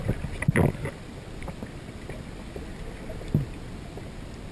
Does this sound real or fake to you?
real